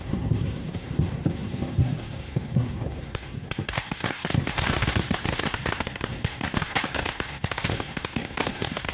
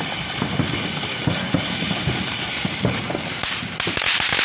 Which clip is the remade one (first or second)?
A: first